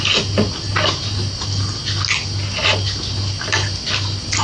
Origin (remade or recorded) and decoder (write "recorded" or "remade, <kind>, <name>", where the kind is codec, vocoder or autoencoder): recorded